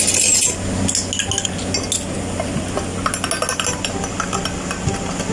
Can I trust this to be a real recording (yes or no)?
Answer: yes